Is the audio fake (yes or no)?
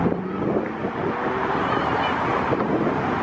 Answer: no